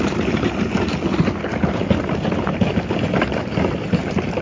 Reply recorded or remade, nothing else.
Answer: recorded